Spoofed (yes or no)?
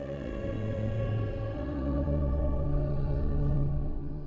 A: yes